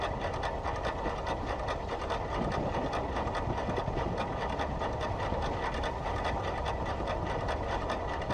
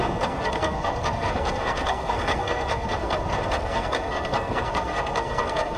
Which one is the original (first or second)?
first